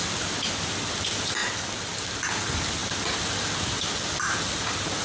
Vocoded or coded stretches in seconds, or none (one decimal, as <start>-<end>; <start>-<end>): none